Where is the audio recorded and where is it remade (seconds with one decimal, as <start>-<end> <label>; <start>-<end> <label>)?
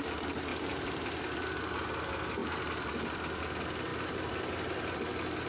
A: 0.0-0.5 recorded; 0.5-1.6 remade; 1.6-2.4 recorded; 2.4-2.9 remade; 2.9-3.9 recorded; 3.9-5.0 remade; 5.0-5.5 recorded